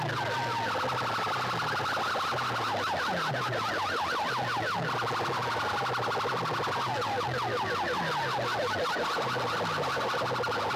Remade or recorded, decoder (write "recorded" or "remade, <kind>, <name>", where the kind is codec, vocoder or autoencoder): recorded